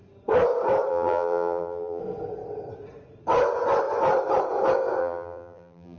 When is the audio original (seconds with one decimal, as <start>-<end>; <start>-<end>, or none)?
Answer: 0.0-0.9; 2.0-5.0